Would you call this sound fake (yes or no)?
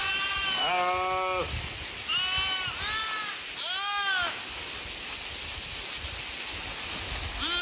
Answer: no